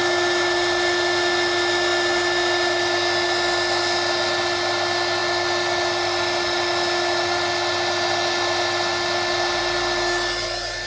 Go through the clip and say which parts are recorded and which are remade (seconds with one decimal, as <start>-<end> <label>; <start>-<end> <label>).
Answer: 0.0-10.9 recorded